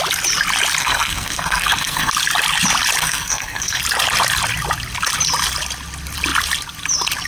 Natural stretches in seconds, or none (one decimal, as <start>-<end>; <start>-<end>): 0.0-0.8; 2.1-3.0; 3.8-7.3